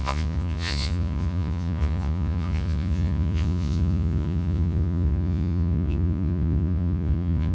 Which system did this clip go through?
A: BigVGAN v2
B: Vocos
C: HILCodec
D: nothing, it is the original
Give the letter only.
B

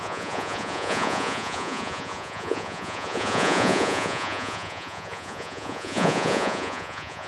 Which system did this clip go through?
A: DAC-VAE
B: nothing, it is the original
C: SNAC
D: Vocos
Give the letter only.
D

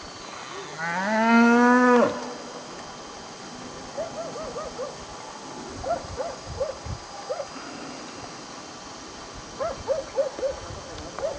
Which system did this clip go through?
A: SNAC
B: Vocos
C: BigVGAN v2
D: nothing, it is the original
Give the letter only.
D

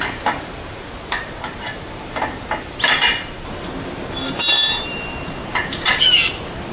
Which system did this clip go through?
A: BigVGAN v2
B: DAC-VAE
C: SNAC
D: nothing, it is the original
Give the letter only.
A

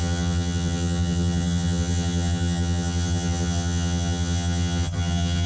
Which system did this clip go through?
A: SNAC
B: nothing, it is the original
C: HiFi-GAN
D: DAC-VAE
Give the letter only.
C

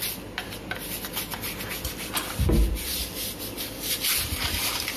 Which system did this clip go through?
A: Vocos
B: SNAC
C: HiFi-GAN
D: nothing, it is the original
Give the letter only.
D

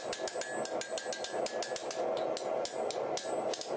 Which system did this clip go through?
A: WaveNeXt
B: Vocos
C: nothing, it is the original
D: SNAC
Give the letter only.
C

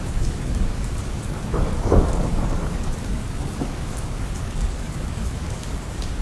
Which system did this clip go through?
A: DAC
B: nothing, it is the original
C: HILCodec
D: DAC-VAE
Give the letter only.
A